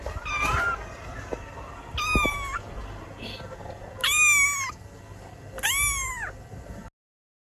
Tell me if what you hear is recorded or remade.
recorded